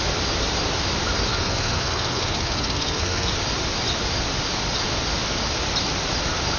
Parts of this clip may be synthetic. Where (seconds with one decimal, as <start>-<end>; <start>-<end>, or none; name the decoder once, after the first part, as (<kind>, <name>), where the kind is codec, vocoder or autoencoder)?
1.3-3.3 (codec, SNAC)